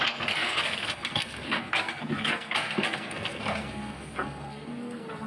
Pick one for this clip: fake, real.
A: fake